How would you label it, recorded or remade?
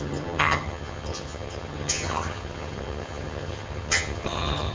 remade